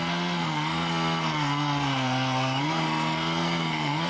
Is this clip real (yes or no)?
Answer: no